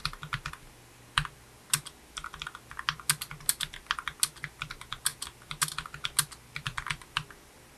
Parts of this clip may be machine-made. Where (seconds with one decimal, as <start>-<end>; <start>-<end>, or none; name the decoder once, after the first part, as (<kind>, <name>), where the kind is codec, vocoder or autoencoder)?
none